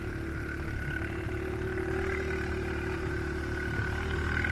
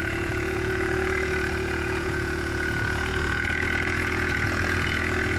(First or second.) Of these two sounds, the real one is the first